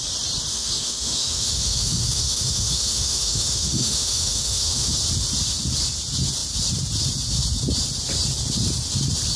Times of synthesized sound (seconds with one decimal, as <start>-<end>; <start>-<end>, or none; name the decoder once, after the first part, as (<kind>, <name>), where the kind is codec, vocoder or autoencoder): 0.5-4.9 (autoencoder, DAC-VAE)